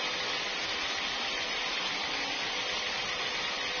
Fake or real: real